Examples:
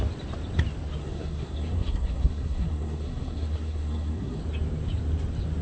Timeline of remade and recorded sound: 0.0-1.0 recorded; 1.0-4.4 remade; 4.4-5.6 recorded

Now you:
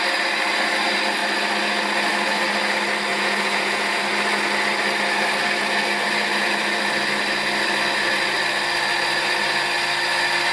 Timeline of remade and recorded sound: 0.0-3.1 recorded; 3.1-4.0 remade; 4.0-10.5 recorded

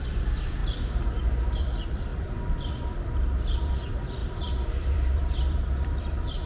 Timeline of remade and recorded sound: 0.0-0.6 remade; 0.6-1.6 recorded; 1.6-6.5 remade

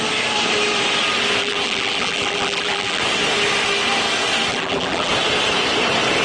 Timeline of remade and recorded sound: 0.0-1.4 recorded; 1.4-3.0 remade; 3.0-4.5 recorded; 4.5-5.1 remade; 5.1-6.2 recorded

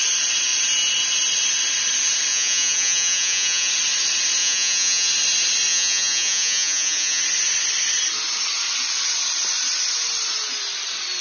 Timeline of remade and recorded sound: 0.0-2.3 recorded; 2.3-3.7 remade; 3.7-4.4 recorded; 4.4-5.1 remade; 5.1-5.7 recorded; 5.7-7.2 remade; 7.2-11.2 recorded

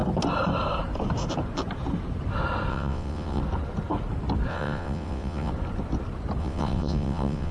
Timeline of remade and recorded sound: 0.0-2.7 recorded; 2.7-3.4 remade; 3.4-4.5 recorded; 4.5-5.5 remade; 5.5-6.4 recorded; 6.4-7.5 remade

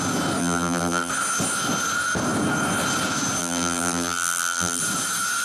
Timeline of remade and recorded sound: 0.0-0.4 recorded; 0.4-1.1 remade; 1.1-3.4 recorded; 3.4-4.8 remade; 4.8-5.4 recorded